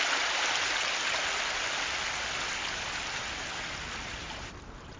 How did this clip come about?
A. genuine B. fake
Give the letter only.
B